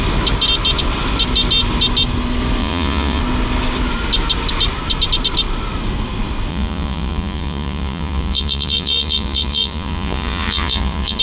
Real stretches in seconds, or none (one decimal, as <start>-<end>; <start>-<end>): 0.0-2.6; 3.2-6.5